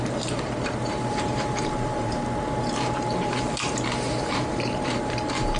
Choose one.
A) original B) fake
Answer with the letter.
B